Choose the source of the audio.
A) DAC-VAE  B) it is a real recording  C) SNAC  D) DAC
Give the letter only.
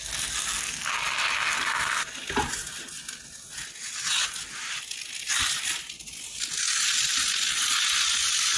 B